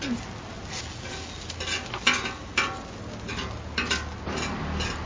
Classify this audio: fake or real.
real